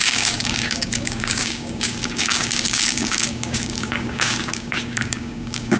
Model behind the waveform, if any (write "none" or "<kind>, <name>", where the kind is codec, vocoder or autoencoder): codec, DAC